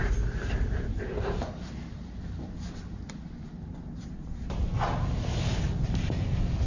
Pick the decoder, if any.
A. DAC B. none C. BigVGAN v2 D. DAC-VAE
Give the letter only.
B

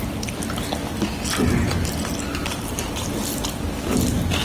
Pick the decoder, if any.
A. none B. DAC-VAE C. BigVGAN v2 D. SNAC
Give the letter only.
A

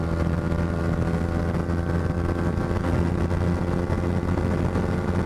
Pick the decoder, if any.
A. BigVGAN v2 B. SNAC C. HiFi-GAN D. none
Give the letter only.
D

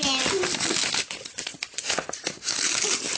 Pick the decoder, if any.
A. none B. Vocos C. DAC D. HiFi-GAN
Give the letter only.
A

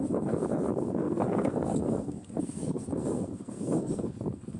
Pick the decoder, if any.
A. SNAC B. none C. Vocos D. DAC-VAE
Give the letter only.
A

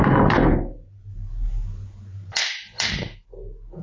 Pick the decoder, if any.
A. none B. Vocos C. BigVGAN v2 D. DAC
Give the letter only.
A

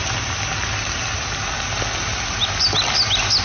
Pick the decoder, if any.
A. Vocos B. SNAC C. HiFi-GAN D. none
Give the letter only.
D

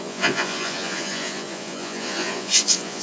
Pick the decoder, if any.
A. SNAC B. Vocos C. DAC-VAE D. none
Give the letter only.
B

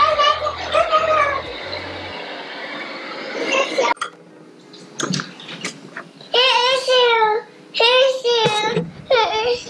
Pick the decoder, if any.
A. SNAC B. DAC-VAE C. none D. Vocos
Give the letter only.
C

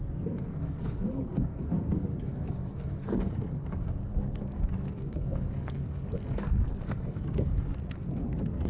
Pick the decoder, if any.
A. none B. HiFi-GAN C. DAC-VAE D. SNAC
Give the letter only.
D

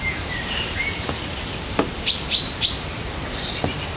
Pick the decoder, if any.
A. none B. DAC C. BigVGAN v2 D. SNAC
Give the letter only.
C